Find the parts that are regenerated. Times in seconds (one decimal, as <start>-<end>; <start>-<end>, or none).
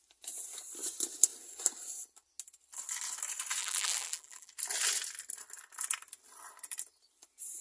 3.6-4.5